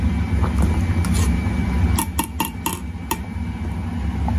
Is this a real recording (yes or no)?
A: yes